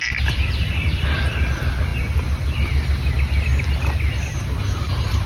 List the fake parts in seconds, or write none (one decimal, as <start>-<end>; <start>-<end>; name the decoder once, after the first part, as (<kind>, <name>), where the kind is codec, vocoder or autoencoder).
none

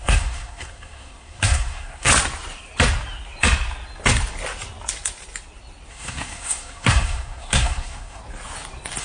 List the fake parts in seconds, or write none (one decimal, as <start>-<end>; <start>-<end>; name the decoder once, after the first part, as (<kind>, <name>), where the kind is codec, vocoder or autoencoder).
0.0-2.1 (codec, SNAC); 5.9-8.2

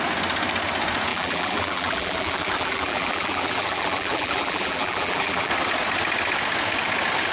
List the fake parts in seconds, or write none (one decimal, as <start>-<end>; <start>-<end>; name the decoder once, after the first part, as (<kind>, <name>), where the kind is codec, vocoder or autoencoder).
1.1-5.5 (vocoder, BigVGAN v2)

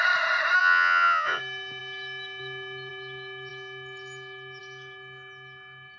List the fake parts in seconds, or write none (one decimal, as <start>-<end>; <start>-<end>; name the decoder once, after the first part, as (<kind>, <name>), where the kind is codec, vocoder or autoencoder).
0.6-1.4 (vocoder, Vocos)